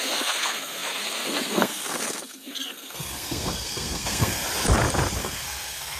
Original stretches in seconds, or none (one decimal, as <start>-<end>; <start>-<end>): 4.4-5.2